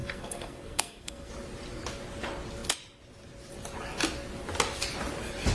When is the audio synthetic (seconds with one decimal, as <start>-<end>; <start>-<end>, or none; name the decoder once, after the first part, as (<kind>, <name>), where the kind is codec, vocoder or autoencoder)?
0.0-1.3 (codec, SNAC)